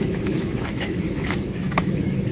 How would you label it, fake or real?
fake